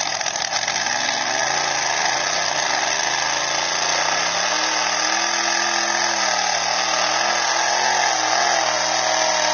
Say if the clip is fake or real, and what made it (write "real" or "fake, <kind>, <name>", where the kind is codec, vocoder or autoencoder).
real